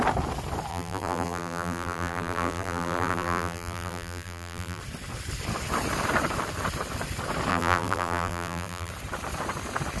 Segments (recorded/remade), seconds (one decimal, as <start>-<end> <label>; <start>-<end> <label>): 0.0-0.7 recorded; 0.7-4.8 remade; 4.8-7.5 recorded; 7.5-8.9 remade; 8.9-10.0 recorded